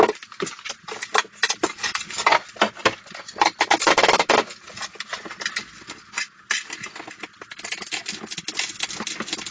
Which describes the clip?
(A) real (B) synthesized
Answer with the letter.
A